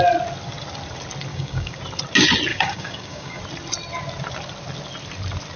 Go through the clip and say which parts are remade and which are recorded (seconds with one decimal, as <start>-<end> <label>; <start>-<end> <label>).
0.0-1.3 recorded; 1.3-1.8 remade; 1.8-2.5 recorded; 2.5-3.4 remade; 3.4-5.6 recorded